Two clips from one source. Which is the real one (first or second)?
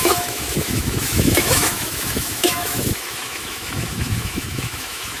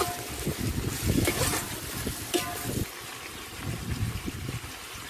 second